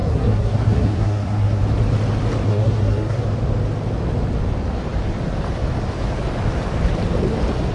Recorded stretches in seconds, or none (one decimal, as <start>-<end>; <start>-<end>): 1.6-2.5; 3.2-7.7